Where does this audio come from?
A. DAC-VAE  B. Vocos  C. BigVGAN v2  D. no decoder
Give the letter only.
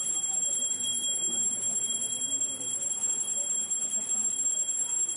D